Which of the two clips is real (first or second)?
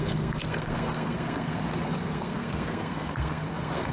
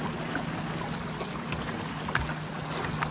second